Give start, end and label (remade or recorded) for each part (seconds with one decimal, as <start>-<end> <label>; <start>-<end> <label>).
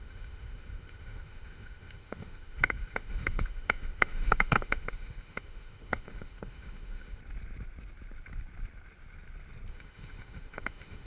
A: 0.0-7.2 remade; 7.2-9.7 recorded; 9.7-11.1 remade